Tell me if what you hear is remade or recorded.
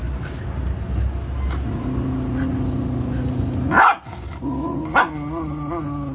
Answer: recorded